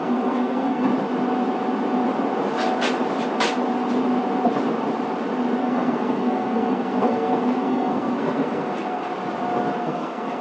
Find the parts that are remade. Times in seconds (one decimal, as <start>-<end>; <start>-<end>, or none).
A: 0.0-0.9; 5.6-9.1; 9.8-10.4